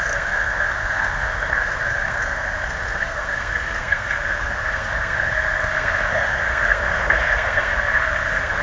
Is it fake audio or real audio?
fake